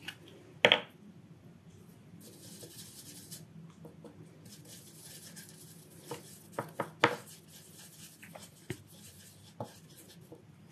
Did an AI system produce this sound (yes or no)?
no